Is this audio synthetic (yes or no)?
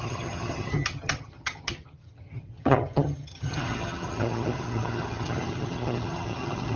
yes